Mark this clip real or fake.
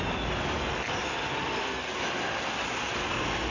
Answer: real